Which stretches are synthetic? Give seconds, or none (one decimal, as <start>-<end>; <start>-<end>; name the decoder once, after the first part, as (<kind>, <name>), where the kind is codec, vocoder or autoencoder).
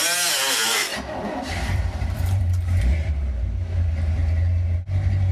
0.9-3.3 (vocoder, BigVGAN v2)